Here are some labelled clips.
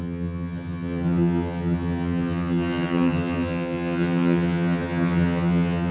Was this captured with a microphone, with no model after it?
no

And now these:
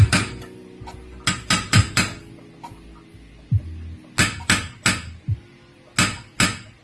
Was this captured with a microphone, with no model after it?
yes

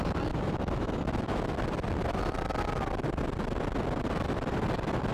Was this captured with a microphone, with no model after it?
yes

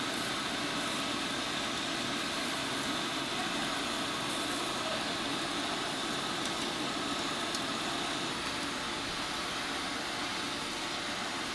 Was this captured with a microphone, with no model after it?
yes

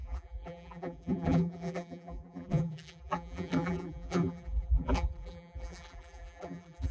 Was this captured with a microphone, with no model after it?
no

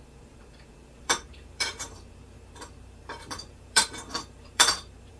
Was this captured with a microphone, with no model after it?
no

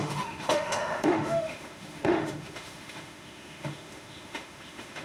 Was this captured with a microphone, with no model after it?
no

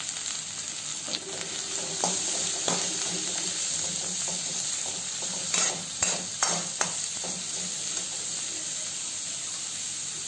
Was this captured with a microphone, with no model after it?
yes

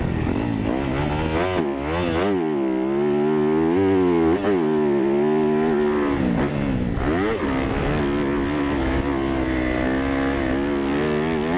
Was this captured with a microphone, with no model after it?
yes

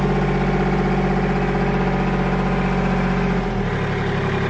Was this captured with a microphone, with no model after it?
yes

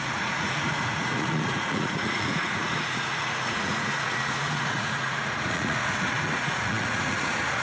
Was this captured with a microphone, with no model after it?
no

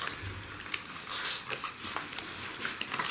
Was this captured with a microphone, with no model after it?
yes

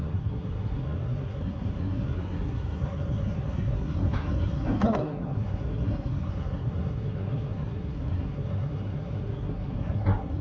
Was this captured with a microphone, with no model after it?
no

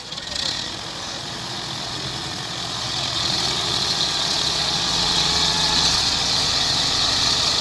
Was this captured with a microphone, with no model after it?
no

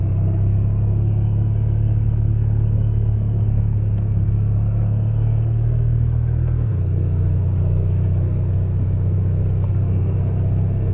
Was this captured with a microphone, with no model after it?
no